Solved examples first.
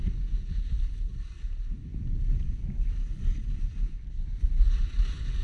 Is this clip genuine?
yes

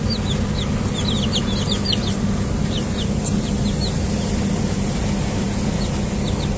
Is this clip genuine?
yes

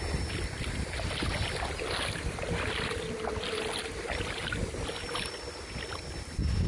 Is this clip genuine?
yes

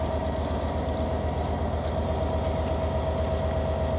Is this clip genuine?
yes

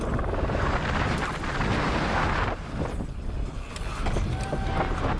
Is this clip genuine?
yes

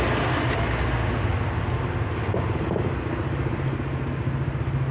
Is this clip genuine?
yes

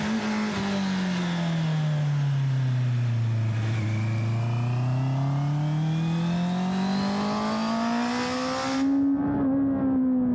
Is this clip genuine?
yes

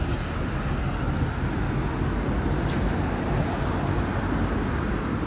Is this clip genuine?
yes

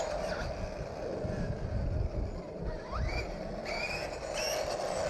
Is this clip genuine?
yes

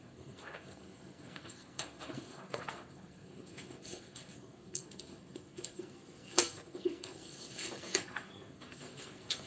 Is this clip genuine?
no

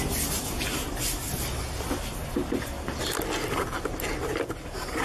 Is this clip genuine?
yes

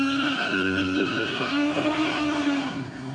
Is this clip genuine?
no